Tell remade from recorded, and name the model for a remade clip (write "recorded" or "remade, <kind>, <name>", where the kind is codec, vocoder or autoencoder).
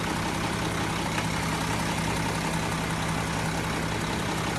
recorded